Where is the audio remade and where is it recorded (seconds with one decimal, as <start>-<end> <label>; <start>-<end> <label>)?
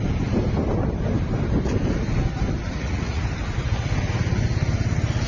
0.0-2.6 recorded; 2.6-3.2 remade; 3.2-5.3 recorded